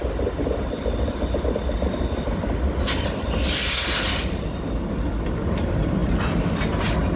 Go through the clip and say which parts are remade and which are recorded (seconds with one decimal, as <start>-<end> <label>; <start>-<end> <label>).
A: 0.0-7.2 recorded